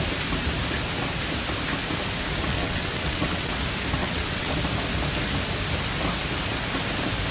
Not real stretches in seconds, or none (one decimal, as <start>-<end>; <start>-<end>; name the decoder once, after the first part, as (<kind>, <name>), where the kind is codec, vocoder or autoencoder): 2.5-3.5 (vocoder, WaveNeXt); 4.0-4.5